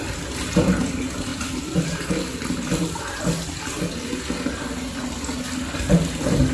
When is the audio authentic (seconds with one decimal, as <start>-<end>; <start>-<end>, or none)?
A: 0.0-6.5